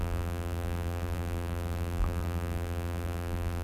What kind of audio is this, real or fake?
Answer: fake